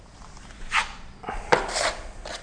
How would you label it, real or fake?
real